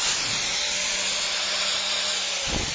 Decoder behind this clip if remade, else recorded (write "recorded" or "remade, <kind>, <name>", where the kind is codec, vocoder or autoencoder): recorded